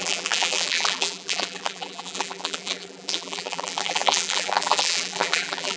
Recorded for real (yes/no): no